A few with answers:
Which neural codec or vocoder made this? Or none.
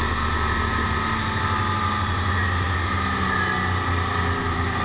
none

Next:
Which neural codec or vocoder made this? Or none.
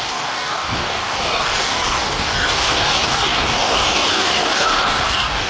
codec, DAC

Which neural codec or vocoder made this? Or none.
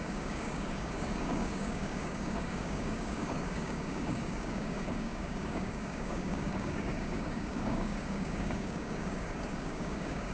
codec, DAC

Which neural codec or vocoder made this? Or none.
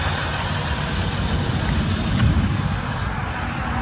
none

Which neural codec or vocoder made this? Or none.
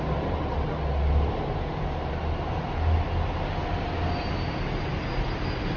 none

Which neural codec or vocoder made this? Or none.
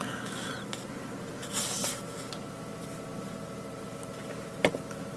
none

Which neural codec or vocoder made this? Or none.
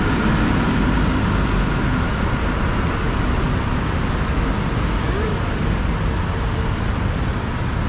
none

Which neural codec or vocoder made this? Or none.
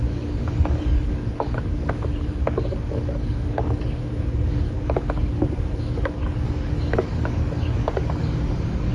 codec, DAC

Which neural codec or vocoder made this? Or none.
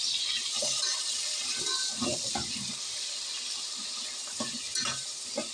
none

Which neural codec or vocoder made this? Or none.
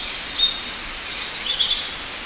none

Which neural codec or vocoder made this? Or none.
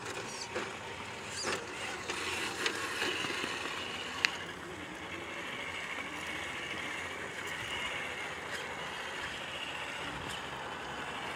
none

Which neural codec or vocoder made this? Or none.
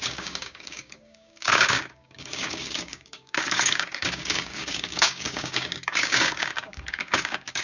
codec, DAC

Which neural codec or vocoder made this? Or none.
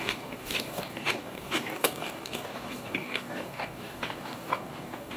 codec, DAC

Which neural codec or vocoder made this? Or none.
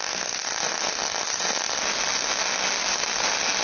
none